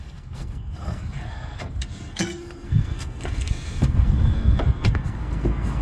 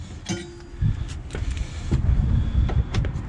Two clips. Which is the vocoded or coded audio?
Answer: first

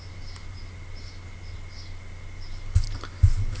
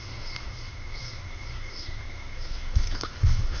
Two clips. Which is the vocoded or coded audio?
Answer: second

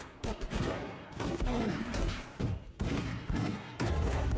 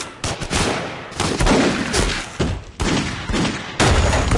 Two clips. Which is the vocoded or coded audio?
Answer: first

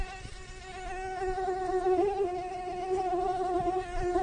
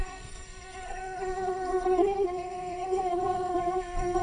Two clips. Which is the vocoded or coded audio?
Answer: second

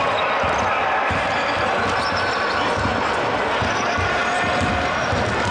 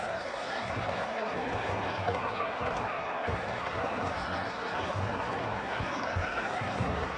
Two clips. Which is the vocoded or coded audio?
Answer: second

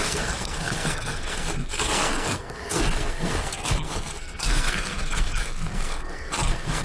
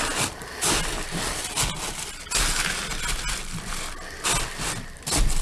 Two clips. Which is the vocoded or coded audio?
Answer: first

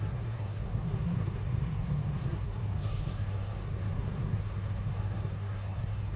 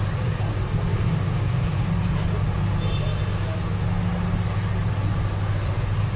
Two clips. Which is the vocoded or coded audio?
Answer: first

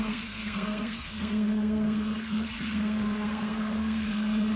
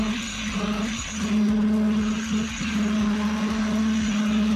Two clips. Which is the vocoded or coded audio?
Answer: first